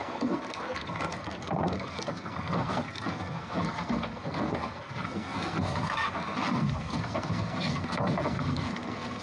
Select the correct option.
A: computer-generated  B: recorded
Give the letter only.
A